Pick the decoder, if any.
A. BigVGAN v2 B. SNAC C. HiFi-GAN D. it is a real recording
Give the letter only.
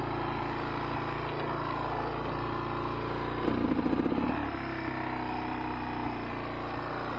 D